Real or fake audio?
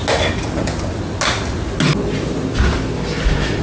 real